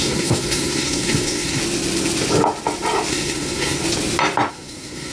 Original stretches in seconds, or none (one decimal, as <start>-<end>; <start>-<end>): 1.6-3.1; 3.8-4.5